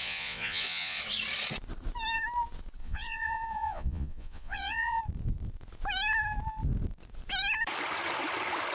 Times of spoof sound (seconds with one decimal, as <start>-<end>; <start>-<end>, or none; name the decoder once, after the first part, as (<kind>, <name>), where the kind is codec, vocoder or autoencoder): 0.0-1.0 (vocoder, Vocos); 2.8-5.0